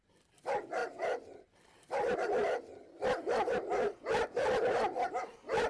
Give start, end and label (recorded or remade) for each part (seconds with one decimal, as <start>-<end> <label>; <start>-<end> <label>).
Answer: 0.0-5.7 recorded